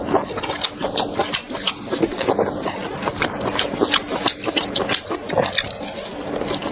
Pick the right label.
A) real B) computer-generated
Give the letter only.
A